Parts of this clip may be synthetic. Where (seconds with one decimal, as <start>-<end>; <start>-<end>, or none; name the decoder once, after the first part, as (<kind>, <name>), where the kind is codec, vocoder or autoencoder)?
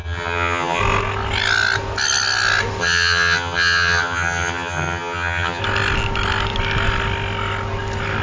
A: 0.0-0.8 (vocoder, HiFi-GAN); 2.8-5.6